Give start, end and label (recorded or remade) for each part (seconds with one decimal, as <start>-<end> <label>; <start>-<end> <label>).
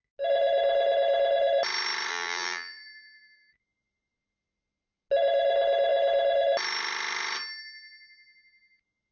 0.0-2.1 recorded; 2.1-3.5 remade; 3.5-9.1 recorded